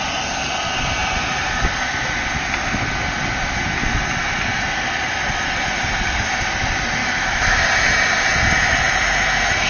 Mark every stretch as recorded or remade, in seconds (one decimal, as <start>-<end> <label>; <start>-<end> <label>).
0.0-7.0 recorded; 7.0-7.6 remade; 7.6-9.7 recorded